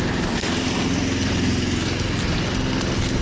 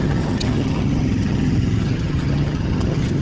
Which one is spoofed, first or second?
second